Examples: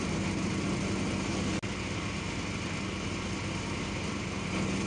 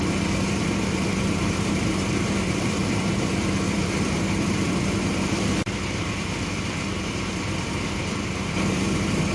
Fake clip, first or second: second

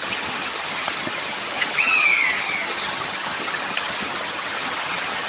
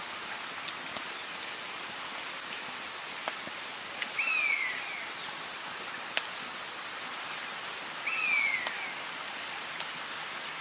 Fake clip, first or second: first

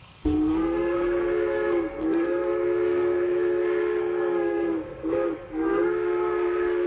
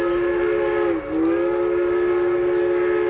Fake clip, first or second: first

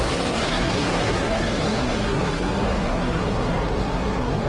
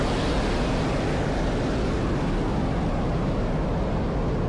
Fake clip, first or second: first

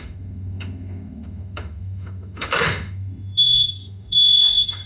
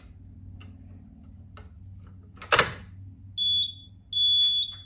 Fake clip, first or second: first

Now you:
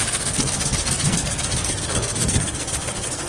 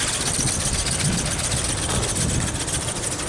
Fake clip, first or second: first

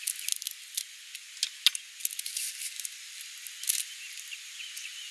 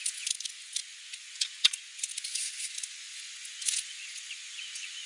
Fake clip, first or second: second